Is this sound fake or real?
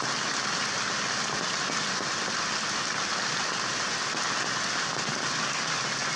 real